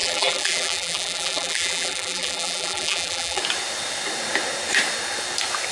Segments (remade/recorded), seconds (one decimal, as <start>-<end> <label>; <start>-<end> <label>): 0.0-3.4 remade; 3.4-5.7 recorded